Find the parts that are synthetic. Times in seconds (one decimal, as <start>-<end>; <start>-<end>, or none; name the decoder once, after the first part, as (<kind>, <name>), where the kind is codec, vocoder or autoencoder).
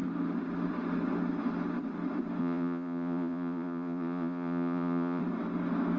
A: 2.4-5.2 (vocoder, Vocos)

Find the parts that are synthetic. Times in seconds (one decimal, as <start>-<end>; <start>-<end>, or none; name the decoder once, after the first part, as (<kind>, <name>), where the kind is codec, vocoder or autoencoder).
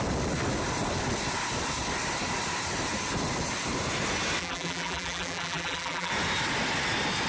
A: 4.4-6.1 (vocoder, BigVGAN v2)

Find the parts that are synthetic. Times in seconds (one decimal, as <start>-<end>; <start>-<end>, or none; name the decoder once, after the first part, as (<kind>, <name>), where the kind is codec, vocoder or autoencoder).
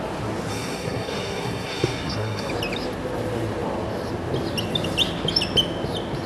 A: 0.5-2.5 (codec, SNAC)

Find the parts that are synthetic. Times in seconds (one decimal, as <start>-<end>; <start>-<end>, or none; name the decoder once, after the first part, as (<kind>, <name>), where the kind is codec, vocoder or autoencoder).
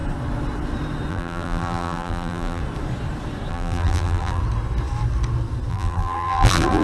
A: 1.1-2.6 (vocoder, BigVGAN v2); 3.5-4.4; 5.7-6.8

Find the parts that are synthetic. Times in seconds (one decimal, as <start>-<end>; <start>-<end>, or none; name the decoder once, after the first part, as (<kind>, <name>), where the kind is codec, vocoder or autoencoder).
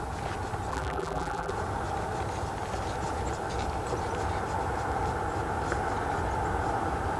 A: 0.7-1.5 (vocoder, BigVGAN v2)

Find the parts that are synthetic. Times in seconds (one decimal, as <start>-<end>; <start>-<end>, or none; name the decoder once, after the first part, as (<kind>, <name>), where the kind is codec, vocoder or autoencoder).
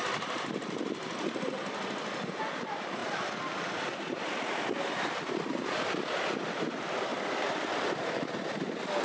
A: none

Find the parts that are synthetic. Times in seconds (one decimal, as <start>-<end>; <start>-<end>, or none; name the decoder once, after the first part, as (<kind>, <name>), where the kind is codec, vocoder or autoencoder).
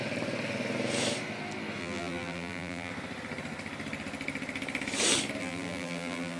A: 1.8-2.9 (vocoder, BigVGAN v2); 5.4-6.4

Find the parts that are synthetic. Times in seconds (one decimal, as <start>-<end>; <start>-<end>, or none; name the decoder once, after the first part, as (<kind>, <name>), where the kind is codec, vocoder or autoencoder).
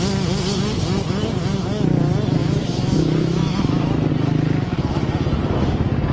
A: 2.4-4.1 (autoencoder, DAC-VAE)